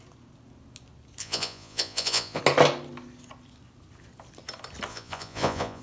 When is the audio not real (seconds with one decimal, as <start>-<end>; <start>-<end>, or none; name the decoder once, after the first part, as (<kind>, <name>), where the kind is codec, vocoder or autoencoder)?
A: 1.2-2.4 (vocoder, Vocos); 4.9-5.8

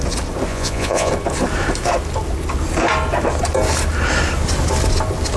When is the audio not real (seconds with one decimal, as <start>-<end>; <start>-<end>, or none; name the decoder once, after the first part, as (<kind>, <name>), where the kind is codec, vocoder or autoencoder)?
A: 0.5-1.1 (vocoder, Vocos)

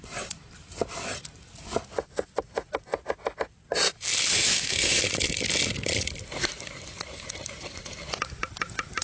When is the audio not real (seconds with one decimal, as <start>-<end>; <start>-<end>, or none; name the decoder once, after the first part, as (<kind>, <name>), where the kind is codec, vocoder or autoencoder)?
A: 4.3-5.0 (autoencoder, DAC-VAE)

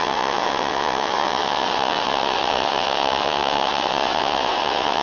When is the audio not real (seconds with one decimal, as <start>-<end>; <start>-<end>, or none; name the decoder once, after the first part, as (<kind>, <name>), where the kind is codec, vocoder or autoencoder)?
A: 0.0-5.0 (vocoder, WaveNeXt)

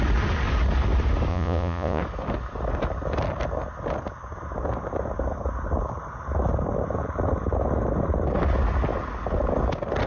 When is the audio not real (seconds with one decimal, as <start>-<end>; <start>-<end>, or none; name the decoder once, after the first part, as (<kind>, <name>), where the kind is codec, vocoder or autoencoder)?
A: 1.3-2.0 (vocoder, Vocos)

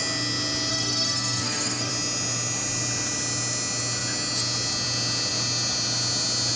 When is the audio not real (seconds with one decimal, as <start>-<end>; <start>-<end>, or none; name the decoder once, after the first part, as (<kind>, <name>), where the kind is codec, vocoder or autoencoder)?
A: 0.7-1.9 (codec, SNAC)

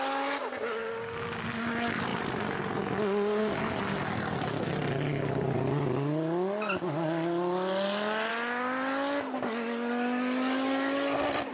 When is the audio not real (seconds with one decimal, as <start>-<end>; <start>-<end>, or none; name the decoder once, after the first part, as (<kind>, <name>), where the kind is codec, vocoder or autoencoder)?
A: none

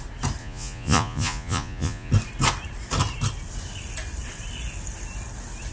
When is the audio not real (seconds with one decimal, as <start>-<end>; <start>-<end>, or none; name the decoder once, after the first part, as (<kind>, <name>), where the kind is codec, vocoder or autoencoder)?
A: 0.4-2.1 (vocoder, Vocos)